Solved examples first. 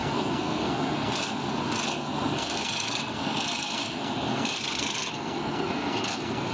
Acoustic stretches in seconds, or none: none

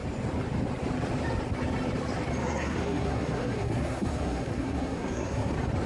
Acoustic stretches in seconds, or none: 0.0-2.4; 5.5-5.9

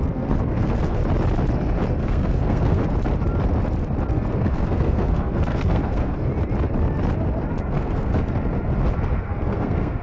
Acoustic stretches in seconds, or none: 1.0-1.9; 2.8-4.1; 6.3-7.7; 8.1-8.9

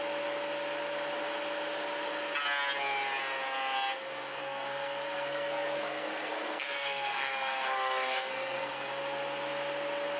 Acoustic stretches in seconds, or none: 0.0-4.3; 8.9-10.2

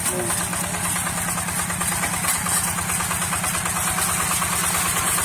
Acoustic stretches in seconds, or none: 0.0-5.2